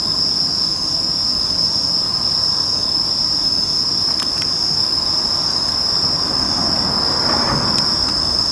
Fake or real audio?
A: real